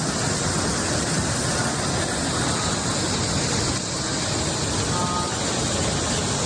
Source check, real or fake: real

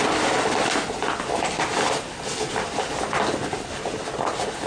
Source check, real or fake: real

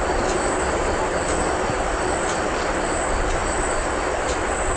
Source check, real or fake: real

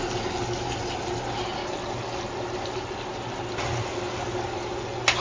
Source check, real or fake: real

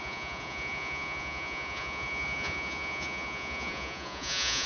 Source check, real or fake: fake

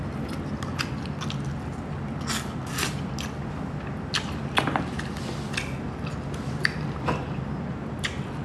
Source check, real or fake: real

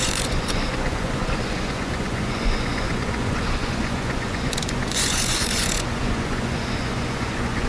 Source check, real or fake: fake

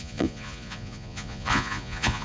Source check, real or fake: fake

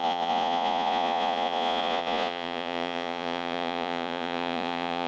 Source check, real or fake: fake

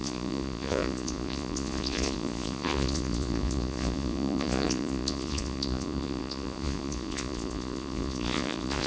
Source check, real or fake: fake